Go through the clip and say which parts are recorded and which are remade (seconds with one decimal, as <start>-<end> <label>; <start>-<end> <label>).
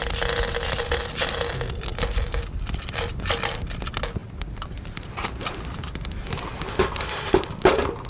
0.0-1.9 recorded; 1.9-3.6 remade; 3.6-4.2 recorded; 4.2-5.1 remade; 5.1-8.1 recorded